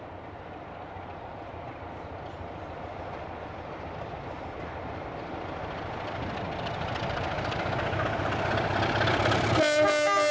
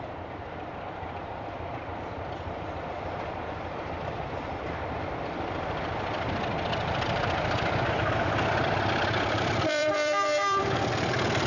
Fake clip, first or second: second